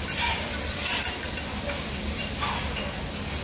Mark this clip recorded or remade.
recorded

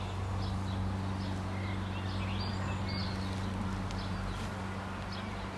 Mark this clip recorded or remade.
recorded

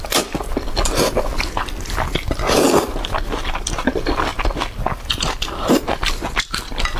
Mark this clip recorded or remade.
recorded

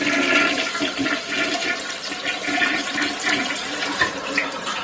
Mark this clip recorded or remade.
remade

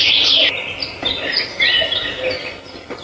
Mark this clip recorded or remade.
remade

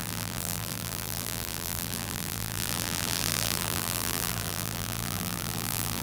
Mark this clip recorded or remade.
remade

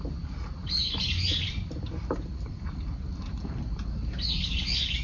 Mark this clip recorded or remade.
recorded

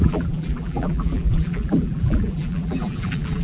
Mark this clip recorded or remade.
remade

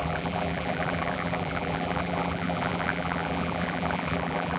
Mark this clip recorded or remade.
remade